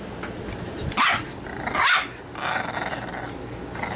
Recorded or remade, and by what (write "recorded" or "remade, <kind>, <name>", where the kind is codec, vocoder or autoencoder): recorded